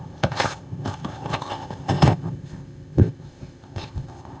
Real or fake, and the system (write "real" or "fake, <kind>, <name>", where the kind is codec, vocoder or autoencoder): fake, codec, ZipCodec